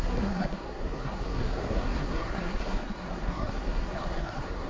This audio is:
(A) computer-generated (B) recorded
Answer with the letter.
A